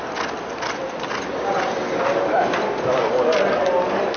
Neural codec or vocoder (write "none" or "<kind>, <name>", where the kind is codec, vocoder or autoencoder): none